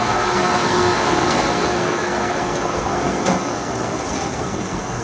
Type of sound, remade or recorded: remade